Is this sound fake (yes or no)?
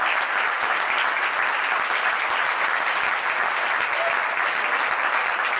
no